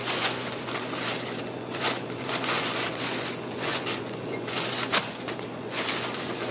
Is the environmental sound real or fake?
fake